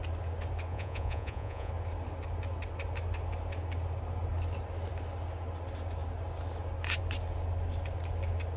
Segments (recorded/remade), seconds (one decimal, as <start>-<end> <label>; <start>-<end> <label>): 0.0-0.7 recorded; 0.7-1.7 remade; 1.7-8.6 recorded